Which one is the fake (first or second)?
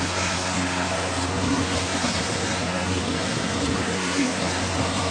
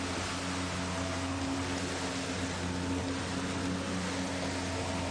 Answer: first